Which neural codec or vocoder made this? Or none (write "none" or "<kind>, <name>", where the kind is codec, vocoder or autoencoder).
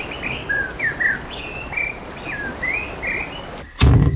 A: none